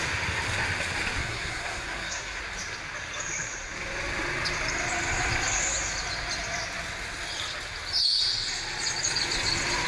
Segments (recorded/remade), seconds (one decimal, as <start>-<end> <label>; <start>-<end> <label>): 0.0-1.2 recorded; 1.2-2.4 remade; 2.4-9.9 recorded